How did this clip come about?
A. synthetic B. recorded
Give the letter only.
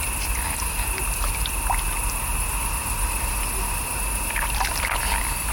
B